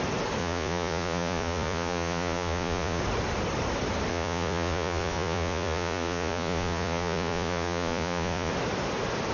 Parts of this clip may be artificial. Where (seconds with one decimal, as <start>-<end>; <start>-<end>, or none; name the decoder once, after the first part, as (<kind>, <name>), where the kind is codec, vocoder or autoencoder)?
0.4-3.0 (vocoder, Vocos); 4.1-8.5